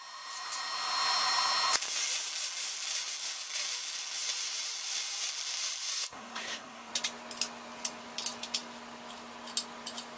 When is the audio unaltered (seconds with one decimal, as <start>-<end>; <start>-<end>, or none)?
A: 0.0-5.9; 6.9-10.2